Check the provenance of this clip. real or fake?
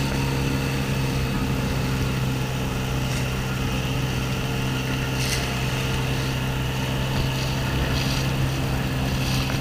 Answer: real